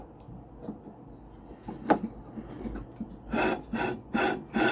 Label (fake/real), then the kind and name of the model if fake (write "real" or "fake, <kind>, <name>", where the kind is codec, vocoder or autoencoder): real